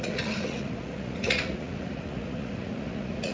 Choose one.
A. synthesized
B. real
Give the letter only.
A